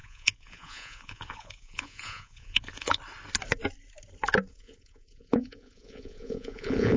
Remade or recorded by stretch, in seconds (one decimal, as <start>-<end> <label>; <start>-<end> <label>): 0.0-3.0 remade; 3.0-4.5 recorded; 4.5-7.0 remade